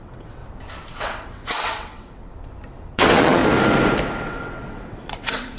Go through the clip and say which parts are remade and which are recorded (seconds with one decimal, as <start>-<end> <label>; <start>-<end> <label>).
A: 0.0-0.4 remade; 0.4-0.9 recorded; 0.9-2.3 remade; 2.3-2.9 recorded; 2.9-3.4 remade; 3.4-4.2 recorded; 4.2-5.6 remade